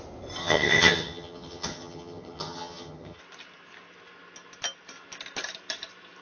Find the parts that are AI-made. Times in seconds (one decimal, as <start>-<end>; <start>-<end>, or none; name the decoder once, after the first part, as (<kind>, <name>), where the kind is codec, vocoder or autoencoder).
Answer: 0.4-3.2 (vocoder, HiFi-GAN)